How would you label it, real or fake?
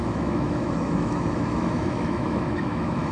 fake